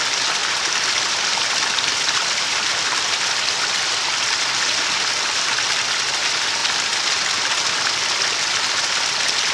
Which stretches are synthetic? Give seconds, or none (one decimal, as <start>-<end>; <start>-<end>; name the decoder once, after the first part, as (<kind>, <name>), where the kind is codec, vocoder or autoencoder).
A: none